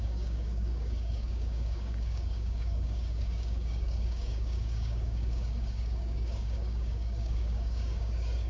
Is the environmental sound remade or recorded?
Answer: remade